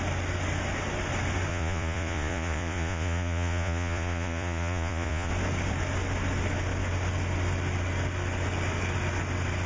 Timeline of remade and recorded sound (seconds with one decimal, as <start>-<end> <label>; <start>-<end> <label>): 0.0-1.5 recorded; 1.5-5.3 remade; 5.3-9.7 recorded

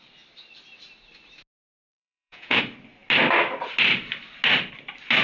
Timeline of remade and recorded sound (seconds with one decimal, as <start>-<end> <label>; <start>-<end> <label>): 0.0-1.7 recorded; 1.7-2.6 remade; 2.6-5.2 recorded

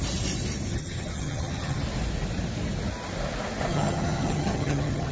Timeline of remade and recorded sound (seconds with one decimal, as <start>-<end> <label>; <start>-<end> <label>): 0.0-0.7 recorded; 0.7-1.8 remade; 1.8-3.7 recorded; 3.7-5.1 remade

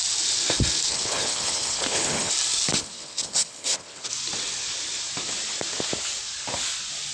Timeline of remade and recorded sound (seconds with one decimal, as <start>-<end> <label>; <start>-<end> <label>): 0.0-0.9 recorded; 0.9-2.3 remade; 2.3-2.8 recorded; 2.8-4.1 remade; 4.1-7.1 recorded

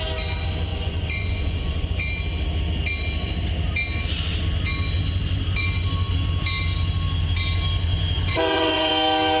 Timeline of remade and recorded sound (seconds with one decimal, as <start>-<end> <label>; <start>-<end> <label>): 0.0-0.7 recorded; 0.7-2.1 remade; 2.1-7.9 recorded; 7.9-8.9 remade; 8.9-9.4 recorded